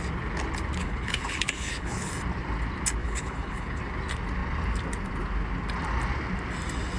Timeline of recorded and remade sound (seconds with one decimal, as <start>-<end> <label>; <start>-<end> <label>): 0.0-0.8 recorded; 0.8-2.1 remade; 2.1-3.0 recorded; 3.0-3.8 remade; 3.8-7.0 recorded